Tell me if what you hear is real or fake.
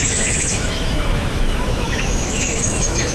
fake